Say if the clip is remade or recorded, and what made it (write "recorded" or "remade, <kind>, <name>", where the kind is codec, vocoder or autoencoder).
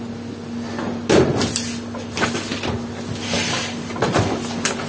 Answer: recorded